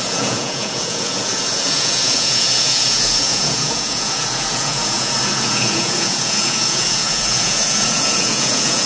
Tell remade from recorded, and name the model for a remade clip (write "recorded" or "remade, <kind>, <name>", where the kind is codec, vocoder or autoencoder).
remade, vocoder, Vocos